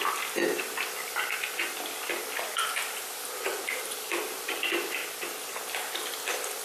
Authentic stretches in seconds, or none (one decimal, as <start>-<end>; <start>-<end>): 0.0-6.6